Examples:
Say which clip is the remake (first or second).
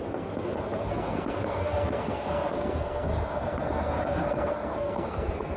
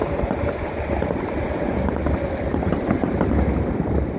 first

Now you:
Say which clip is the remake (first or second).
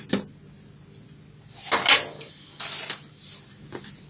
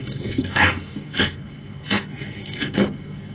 second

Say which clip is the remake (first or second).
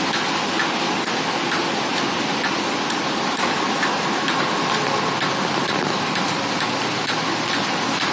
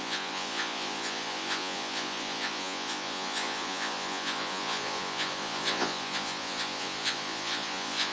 second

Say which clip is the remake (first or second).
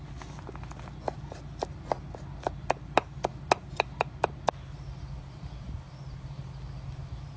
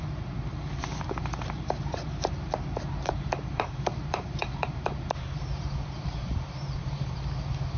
second